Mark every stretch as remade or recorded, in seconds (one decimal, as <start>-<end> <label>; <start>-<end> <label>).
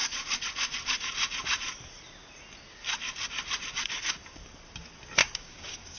0.0-5.2 recorded; 5.2-6.0 remade